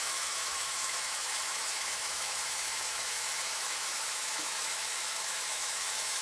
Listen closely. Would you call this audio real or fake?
fake